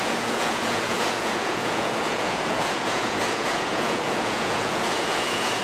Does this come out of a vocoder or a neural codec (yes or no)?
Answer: yes